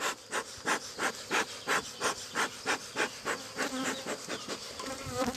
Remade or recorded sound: remade